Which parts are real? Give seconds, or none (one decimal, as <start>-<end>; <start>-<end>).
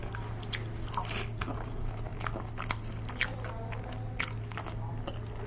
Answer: 0.0-5.5